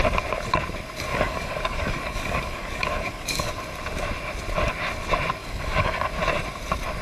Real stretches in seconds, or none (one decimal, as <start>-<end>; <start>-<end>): 0.0-1.1; 3.5-5.4; 6.1-7.0